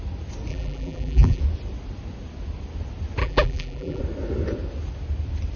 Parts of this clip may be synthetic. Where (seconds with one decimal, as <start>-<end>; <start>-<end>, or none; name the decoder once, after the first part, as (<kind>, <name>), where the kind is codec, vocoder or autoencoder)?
0.5-1.4 (vocoder, BigVGAN v2); 3.2-4.0